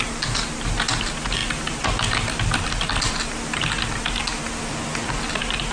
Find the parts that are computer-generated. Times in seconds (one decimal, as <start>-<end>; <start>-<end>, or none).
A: none